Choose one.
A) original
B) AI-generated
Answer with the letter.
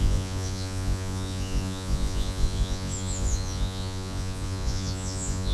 B